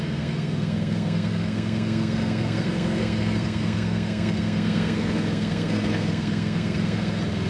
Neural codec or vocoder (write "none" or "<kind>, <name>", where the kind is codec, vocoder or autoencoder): codec, SNAC